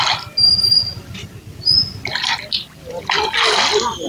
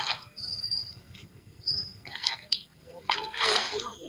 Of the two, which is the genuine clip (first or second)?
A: first